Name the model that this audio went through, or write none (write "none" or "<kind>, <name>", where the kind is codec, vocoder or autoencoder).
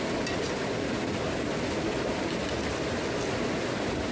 none